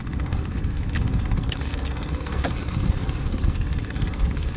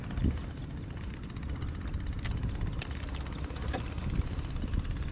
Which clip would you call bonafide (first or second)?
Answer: second